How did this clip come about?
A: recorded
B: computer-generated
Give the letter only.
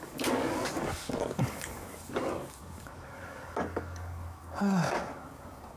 B